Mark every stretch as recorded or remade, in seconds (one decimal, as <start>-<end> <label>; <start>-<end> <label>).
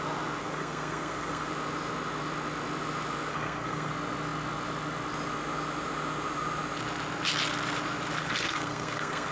0.0-0.4 recorded; 0.4-1.5 remade; 1.5-3.3 recorded; 3.3-3.9 remade; 3.9-8.2 recorded; 8.2-9.3 remade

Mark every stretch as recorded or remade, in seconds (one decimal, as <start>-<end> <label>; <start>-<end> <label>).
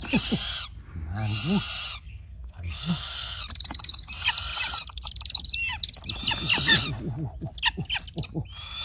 0.0-2.1 recorded; 2.1-3.4 remade; 3.4-8.8 recorded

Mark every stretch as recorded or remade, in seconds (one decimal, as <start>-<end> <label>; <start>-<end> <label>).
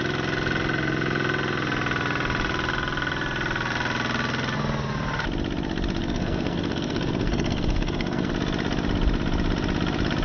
0.0-6.0 recorded; 6.0-8.3 remade; 8.3-10.2 recorded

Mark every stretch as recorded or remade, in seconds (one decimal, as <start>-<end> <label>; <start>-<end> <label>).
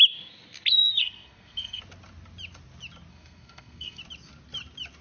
0.0-1.0 recorded; 1.0-1.8 remade; 1.8-3.1 recorded; 3.1-4.0 remade; 4.0-5.0 recorded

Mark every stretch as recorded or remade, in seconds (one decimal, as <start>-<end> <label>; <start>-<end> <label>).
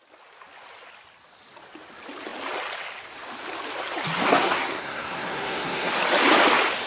0.0-4.3 recorded; 4.3-5.9 remade; 5.9-6.9 recorded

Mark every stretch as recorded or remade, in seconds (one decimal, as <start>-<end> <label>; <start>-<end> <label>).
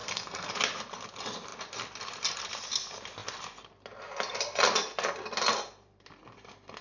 0.0-0.5 remade; 0.5-6.8 recorded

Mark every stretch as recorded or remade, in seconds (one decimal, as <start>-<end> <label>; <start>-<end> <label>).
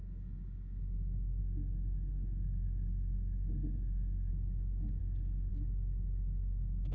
0.0-1.4 recorded; 1.4-4.3 remade; 4.3-5.0 recorded; 5.0-5.5 remade; 5.5-6.9 recorded